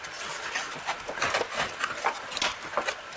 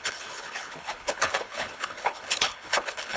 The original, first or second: first